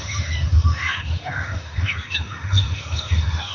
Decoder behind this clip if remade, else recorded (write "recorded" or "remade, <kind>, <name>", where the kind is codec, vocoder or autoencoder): remade, autoencoder, DAC-VAE